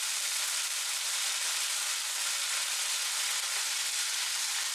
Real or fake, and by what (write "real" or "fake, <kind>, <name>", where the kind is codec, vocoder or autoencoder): real